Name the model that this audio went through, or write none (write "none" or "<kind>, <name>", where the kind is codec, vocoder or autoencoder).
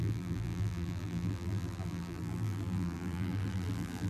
vocoder, BigVGAN v2